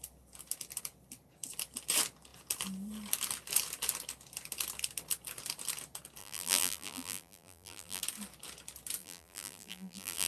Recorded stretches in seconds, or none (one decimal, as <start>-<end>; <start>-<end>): 0.0-6.2; 8.0-9.0